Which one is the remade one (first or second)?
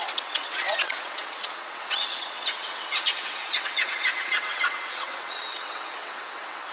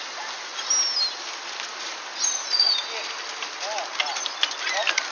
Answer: first